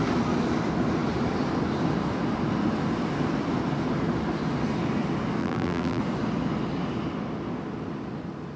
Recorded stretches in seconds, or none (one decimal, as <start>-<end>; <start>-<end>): 0.0-5.4; 6.0-8.6